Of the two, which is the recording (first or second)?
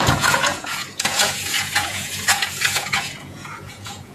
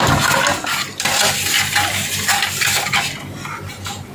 second